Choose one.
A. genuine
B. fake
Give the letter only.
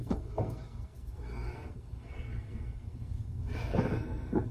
B